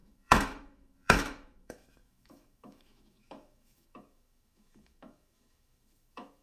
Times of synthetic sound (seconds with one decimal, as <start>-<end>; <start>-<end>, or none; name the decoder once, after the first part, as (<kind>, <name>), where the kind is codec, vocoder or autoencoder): 0.0-6.4 (autoencoder, DAC-VAE)